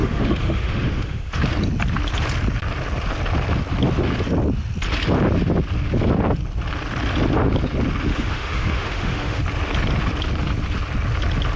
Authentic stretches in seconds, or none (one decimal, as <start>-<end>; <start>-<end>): 1.4-8.1; 9.4-11.6